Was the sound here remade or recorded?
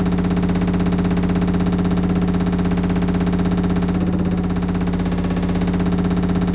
recorded